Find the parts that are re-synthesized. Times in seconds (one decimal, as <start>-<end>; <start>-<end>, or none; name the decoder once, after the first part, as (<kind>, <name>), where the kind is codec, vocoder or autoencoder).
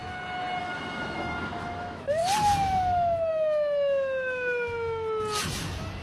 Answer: 0.6-2.2 (autoencoder, DAC-VAE)